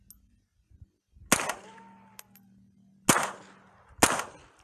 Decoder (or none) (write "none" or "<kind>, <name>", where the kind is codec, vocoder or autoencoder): none